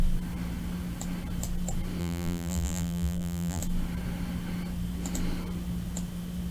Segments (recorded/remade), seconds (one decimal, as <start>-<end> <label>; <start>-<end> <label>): 0.0-2.0 recorded; 2.0-3.6 remade; 3.6-6.5 recorded